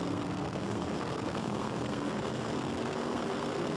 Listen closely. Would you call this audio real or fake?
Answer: fake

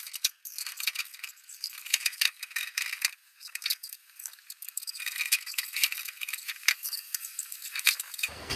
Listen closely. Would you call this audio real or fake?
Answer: fake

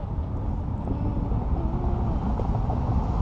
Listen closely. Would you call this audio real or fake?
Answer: real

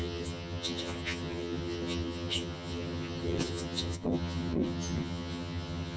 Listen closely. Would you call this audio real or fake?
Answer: fake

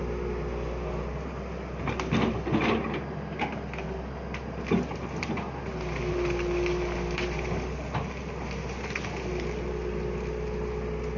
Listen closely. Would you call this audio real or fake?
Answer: real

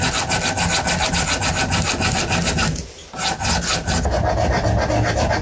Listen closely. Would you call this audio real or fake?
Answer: real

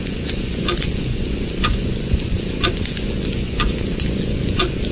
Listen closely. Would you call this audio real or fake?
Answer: fake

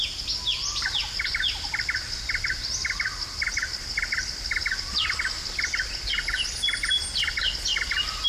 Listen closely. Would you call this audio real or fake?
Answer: real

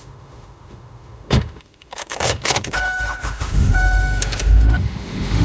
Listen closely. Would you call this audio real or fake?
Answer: fake